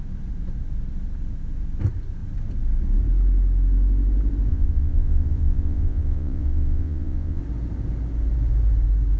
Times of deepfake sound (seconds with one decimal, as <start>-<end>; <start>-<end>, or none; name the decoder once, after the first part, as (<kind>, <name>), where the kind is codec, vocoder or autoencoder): 4.5-7.4 (vocoder, Vocos)